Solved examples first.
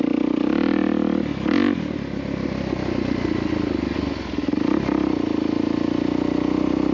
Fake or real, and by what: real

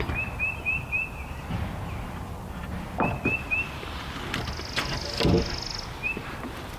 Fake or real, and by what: real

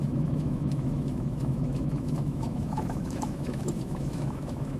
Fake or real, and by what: fake, autoencoder, DAC-VAE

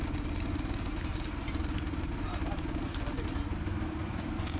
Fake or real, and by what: real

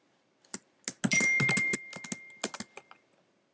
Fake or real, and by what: real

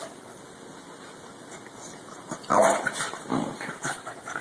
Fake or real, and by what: real